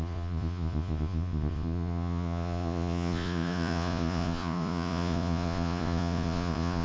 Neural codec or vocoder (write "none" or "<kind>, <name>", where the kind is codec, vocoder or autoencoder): vocoder, Vocos